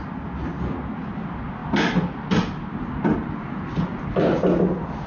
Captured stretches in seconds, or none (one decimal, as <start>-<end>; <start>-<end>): 0.0-5.1

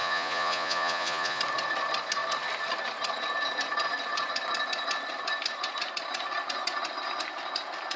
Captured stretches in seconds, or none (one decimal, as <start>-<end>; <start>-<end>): 1.4-8.0

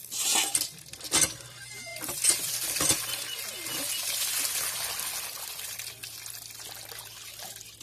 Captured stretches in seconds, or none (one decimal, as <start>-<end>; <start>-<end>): 0.0-7.8

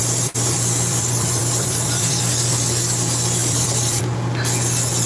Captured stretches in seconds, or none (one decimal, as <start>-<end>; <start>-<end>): 2.5-3.4; 4.0-5.1

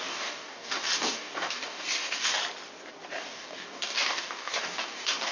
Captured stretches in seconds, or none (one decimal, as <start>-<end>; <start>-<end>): 2.4-3.1

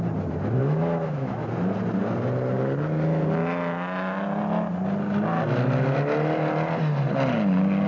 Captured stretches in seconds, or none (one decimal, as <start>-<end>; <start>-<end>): 0.0-0.6; 1.5-7.9